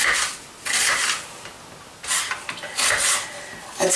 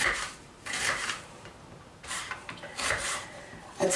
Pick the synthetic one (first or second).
second